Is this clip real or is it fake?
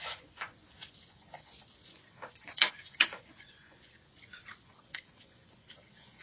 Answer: fake